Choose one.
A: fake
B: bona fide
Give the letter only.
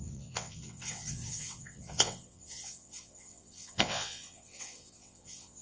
A